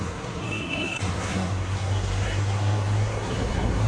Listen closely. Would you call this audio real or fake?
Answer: fake